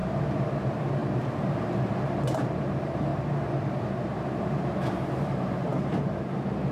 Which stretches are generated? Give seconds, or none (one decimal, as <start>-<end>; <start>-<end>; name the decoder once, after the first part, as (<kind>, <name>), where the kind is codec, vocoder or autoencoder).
0.6-1.0 (vocoder, BigVGAN v2); 2.4-3.1; 4.4-6.7